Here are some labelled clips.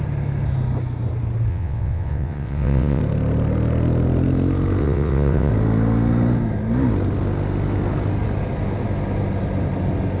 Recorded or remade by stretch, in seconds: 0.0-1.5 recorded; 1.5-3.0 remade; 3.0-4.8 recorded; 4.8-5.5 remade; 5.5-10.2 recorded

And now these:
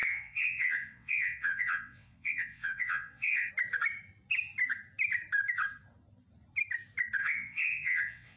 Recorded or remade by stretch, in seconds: 0.0-3.5 remade; 3.5-7.2 recorded; 7.2-8.4 remade